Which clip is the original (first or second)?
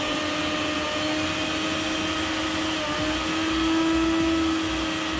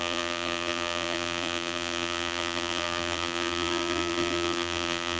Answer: first